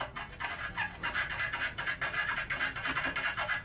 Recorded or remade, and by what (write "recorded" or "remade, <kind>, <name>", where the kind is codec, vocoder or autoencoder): recorded